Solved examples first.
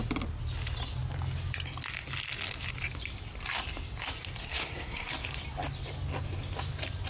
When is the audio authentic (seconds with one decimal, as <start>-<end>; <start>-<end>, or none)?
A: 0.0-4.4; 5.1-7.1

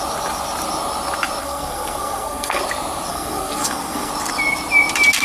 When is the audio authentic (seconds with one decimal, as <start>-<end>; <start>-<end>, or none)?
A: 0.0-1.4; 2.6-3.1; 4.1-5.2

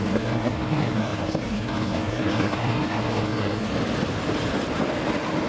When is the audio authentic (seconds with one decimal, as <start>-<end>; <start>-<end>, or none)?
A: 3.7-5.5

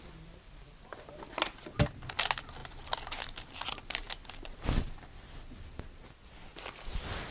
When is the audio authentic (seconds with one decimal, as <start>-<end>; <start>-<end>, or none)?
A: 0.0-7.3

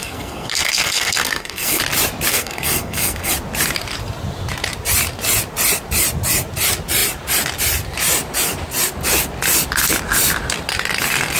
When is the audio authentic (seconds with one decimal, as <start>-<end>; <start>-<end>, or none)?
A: 1.8-2.3; 3.3-11.4

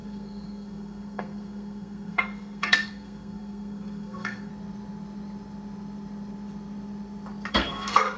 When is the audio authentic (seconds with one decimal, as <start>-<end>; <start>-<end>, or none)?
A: 4.5-7.5

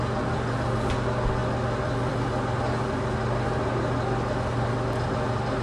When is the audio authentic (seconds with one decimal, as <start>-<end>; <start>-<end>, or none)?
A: 0.0-5.6

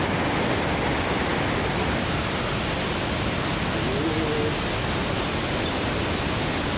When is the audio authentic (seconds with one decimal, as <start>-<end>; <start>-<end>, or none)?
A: 0.0-6.8